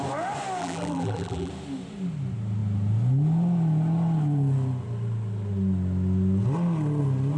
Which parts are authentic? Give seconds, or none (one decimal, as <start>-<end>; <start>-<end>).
0.0-0.6; 1.5-7.4